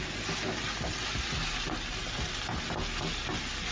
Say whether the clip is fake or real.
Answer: real